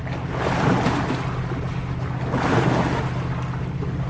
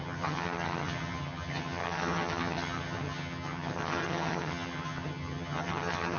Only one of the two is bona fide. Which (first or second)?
first